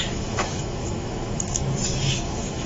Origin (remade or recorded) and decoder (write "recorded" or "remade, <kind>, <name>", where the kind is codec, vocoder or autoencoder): remade, autoencoder, DAC-VAE